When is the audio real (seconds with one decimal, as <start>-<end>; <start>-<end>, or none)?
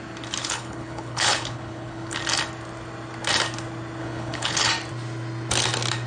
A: 0.0-0.4; 2.2-4.0; 4.7-6.1